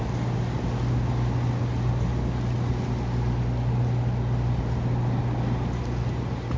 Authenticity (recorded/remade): recorded